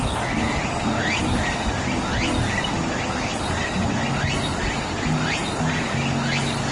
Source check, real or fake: real